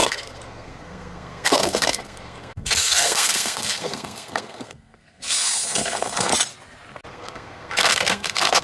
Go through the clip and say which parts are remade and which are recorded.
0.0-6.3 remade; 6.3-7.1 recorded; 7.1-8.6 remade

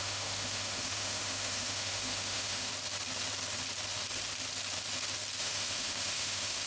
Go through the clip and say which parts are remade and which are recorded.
0.0-2.7 remade; 2.7-5.4 recorded; 5.4-6.7 remade

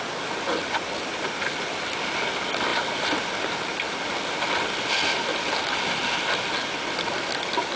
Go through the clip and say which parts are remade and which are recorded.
0.0-7.8 recorded

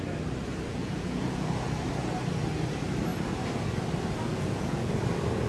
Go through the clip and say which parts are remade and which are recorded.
0.0-0.7 recorded; 0.7-1.5 remade; 1.5-4.3 recorded; 4.3-4.9 remade; 4.9-5.5 recorded

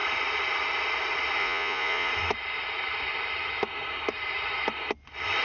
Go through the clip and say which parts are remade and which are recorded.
0.0-1.4 recorded; 1.4-2.1 remade; 2.1-5.4 recorded

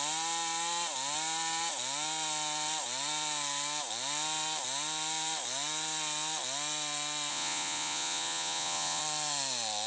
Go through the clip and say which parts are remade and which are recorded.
0.0-7.3 recorded; 7.3-9.0 remade; 9.0-9.9 recorded

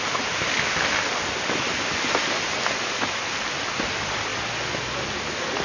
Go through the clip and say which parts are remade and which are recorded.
0.0-5.6 recorded